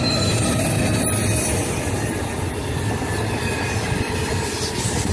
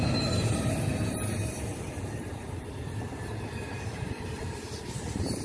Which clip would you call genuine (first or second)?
first